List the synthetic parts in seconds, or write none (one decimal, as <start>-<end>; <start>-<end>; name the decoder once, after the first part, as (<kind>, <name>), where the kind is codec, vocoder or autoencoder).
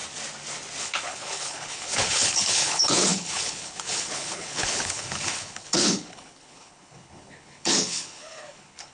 0.8-8.9 (codec, HILCodec)